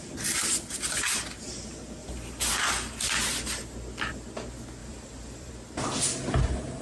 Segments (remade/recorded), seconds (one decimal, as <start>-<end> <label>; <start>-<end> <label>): 0.0-2.0 recorded; 2.0-2.5 remade; 2.5-4.8 recorded; 4.8-5.5 remade; 5.5-6.8 recorded